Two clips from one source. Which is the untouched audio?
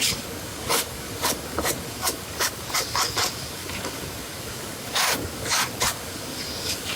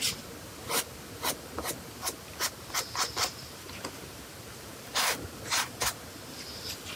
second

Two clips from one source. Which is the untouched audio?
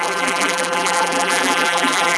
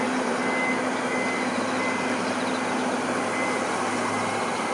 second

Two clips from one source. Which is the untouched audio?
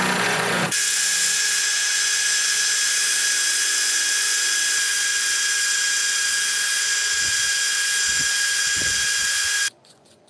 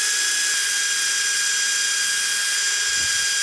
second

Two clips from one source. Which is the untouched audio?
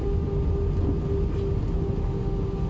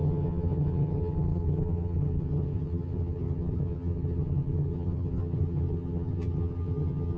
first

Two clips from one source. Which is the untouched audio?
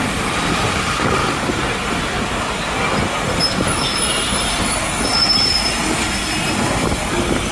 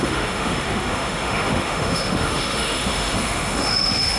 first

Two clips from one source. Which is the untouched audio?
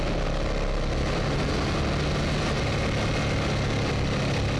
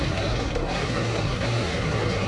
first